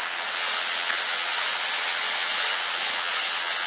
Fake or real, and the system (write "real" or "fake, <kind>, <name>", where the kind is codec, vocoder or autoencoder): fake, vocoder, WaveNeXt